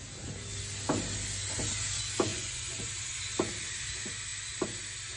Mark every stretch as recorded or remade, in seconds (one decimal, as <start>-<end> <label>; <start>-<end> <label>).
0.0-2.3 recorded; 2.3-2.8 remade; 2.8-5.2 recorded